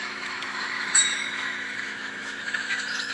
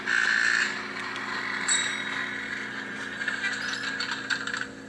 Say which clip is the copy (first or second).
first